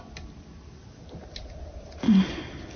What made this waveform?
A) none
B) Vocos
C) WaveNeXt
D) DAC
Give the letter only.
A